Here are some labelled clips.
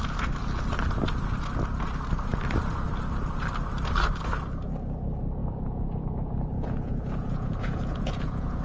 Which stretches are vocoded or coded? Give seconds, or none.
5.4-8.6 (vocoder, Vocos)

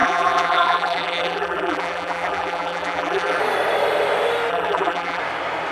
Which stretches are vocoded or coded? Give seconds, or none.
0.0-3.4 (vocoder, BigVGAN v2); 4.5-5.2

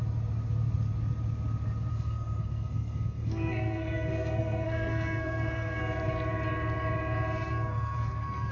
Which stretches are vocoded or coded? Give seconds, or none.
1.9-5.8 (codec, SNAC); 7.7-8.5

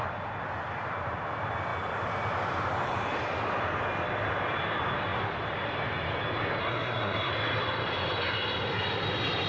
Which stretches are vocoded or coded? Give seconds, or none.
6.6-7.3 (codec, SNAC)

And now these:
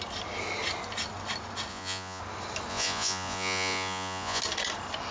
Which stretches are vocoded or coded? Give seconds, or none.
1.7-2.2 (vocoder, Vocos); 2.7-4.4

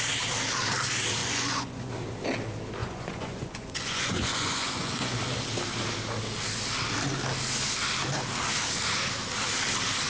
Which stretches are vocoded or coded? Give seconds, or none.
1.2-1.9 (vocoder, Vocos); 2.8-5.2